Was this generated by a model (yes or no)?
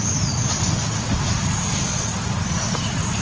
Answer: no